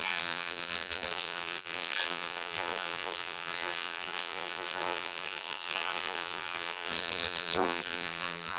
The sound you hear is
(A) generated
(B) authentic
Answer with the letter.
A